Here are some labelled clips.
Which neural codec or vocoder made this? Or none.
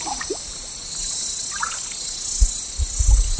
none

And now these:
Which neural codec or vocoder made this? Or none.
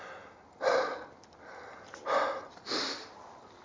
none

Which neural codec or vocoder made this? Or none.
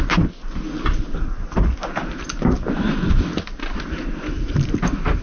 none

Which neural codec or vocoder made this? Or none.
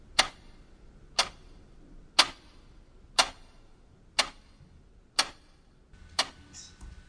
none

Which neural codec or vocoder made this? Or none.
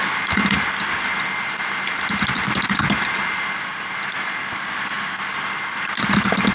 none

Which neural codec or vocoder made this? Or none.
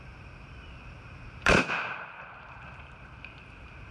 vocoder, BigVGAN v2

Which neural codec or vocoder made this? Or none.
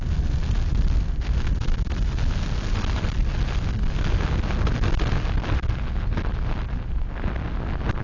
none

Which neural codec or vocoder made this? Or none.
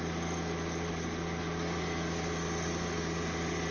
none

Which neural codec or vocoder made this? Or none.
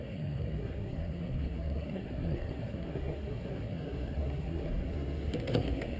codec, SNAC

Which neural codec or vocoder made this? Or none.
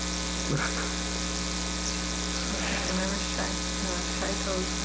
none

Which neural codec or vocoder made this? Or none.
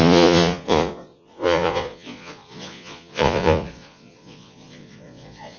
vocoder, Vocos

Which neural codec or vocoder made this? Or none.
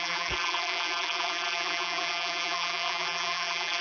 vocoder, BigVGAN v2